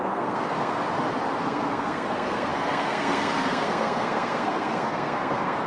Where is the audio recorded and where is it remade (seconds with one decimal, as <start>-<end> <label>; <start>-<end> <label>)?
0.0-0.8 remade; 0.8-1.4 recorded; 1.4-5.7 remade